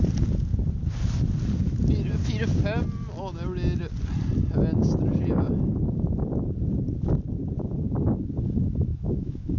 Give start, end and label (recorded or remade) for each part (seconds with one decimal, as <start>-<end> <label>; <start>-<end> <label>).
0.0-8.9 recorded; 8.9-9.6 remade